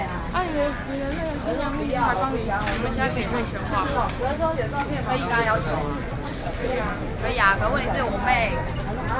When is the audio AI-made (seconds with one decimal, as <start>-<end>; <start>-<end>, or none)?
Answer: 6.0-7.0